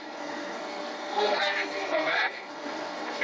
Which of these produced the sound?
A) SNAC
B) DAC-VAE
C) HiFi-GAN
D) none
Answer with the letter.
A